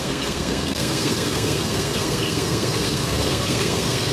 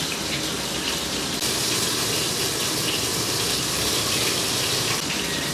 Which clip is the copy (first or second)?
first